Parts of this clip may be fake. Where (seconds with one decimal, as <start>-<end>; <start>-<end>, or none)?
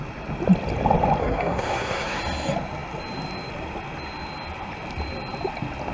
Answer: 1.2-2.2